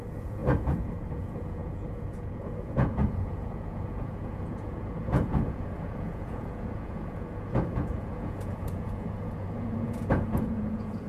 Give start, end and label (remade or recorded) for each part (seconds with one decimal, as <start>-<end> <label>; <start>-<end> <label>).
0.0-11.1 remade